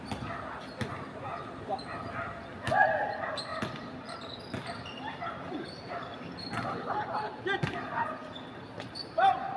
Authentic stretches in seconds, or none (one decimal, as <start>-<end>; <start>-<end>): 0.0-9.6